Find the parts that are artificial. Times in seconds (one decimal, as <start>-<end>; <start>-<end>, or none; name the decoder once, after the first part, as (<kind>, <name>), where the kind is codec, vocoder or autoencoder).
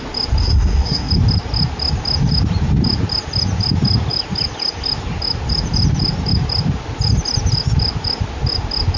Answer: 0.4-1.1 (codec, SNAC)